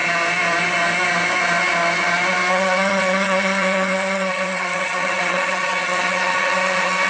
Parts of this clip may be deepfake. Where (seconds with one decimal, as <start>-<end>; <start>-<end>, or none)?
2.5-7.1